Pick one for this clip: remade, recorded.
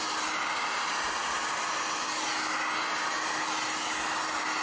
recorded